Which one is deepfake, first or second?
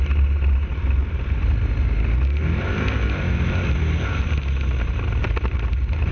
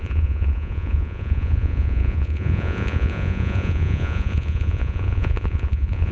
second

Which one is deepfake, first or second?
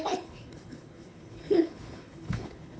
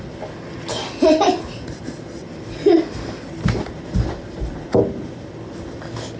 first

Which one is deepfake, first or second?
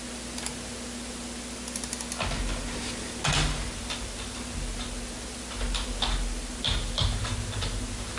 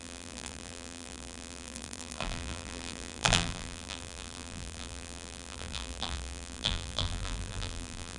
second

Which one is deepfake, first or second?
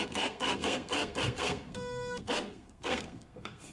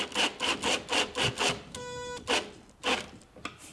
first